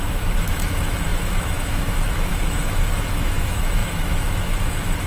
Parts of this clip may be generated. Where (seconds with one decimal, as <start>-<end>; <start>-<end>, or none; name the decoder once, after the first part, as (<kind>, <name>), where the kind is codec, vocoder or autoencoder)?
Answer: 0.0-5.1 (autoencoder, DAC-VAE)